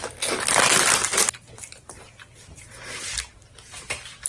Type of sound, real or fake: real